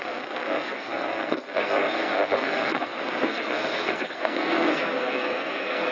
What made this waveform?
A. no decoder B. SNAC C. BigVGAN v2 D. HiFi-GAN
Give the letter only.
B